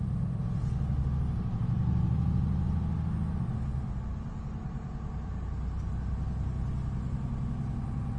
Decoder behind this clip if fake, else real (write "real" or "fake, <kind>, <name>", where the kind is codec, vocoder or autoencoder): real